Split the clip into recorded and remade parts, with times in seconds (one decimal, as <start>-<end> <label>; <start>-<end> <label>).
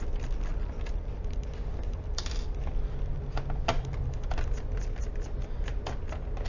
0.0-0.5 recorded; 0.5-4.4 remade; 4.4-6.5 recorded